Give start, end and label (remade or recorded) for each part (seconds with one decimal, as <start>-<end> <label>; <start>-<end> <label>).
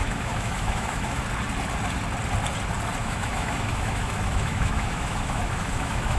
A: 0.0-1.2 remade; 1.2-3.0 recorded; 3.0-6.2 remade